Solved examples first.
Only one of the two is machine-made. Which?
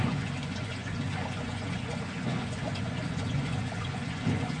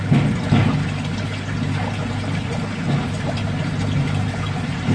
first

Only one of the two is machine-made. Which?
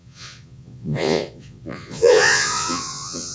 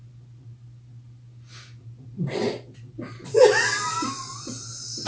first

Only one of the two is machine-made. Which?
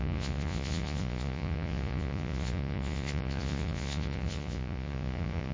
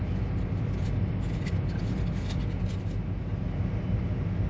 first